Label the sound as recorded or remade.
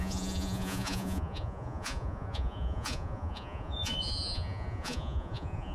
remade